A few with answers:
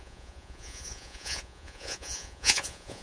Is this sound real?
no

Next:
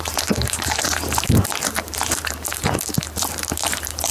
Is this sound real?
no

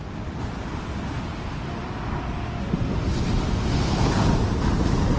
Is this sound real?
yes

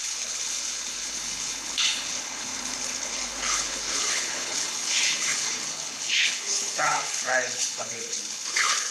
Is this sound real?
no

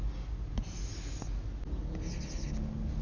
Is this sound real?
yes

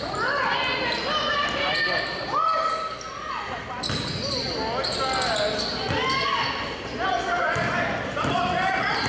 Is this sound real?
yes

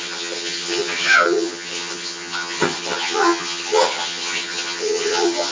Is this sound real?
no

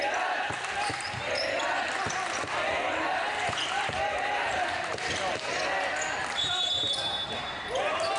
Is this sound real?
yes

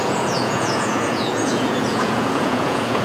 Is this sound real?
no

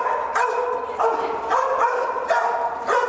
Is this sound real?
yes